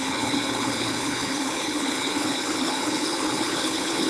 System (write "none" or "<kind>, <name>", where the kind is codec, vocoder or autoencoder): codec, HILCodec